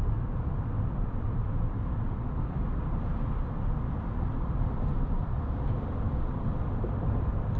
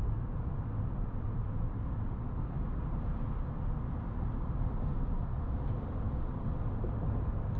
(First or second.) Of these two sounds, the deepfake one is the first